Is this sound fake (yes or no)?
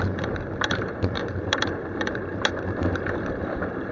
yes